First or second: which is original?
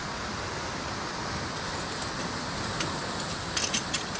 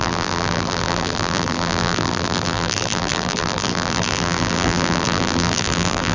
first